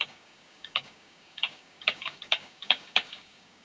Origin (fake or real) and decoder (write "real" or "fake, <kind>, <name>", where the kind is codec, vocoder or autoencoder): fake, codec, DAC